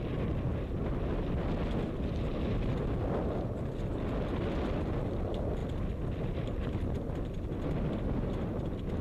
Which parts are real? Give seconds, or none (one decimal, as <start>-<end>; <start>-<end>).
0.0-9.0